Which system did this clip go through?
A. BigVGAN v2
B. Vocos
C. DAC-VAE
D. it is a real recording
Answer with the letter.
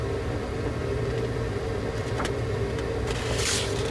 D